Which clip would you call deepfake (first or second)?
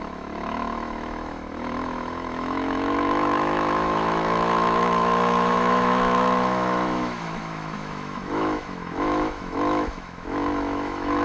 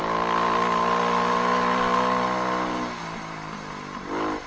first